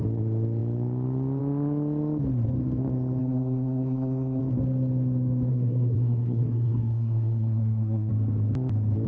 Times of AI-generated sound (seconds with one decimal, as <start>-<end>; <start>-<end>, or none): 3.2-4.4; 5.5-8.1